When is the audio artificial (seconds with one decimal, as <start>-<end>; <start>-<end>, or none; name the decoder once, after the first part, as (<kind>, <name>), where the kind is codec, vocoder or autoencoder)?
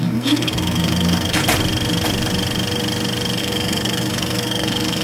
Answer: 0.0-1.4 (codec, SNAC); 3.4-5.0